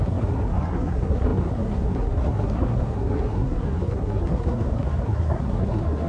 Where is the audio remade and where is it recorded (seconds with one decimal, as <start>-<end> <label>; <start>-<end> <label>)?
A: 0.0-6.1 remade